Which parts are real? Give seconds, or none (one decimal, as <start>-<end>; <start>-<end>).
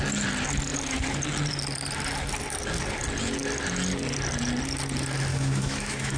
0.0-5.3